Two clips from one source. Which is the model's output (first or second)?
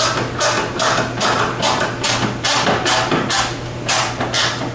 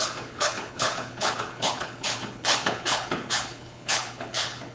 second